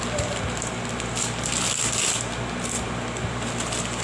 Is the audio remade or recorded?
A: recorded